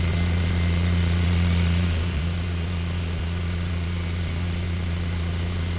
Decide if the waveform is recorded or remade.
remade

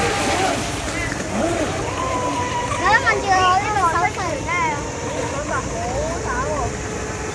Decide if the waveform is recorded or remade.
recorded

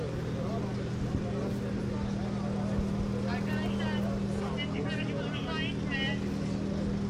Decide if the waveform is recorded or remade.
recorded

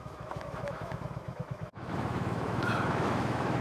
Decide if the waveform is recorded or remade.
remade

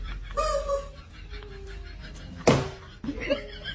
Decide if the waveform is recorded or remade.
recorded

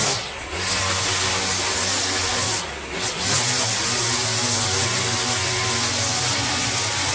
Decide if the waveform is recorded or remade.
recorded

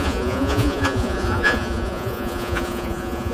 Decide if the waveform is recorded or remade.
remade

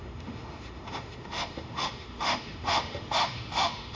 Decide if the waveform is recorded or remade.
remade